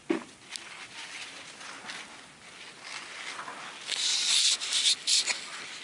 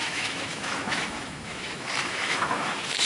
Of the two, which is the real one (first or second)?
first